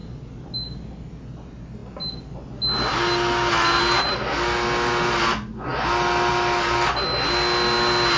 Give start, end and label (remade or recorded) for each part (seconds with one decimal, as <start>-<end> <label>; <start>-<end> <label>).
0.0-8.2 recorded